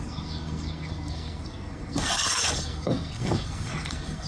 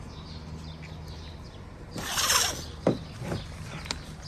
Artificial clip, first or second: first